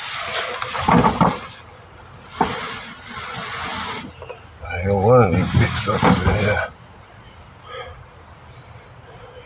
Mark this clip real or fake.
real